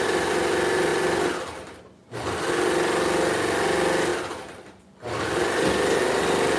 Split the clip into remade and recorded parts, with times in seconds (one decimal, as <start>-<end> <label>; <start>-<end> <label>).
0.0-6.6 recorded